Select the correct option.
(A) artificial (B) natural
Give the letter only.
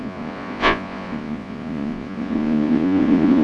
A